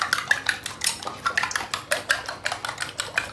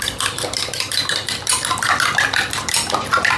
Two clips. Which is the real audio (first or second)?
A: first